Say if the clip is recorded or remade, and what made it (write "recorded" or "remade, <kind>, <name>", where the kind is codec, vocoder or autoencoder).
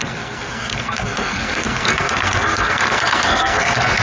remade, codec, SNAC